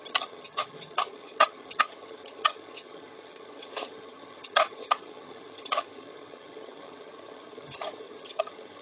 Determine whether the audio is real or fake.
fake